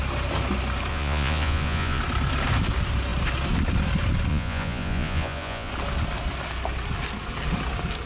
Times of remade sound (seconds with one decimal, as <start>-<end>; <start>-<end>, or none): 0.9-2.0; 4.3-5.7